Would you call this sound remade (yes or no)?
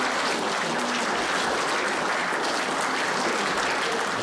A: no